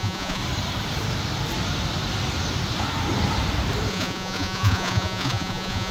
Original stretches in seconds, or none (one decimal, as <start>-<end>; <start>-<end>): 0.4-3.9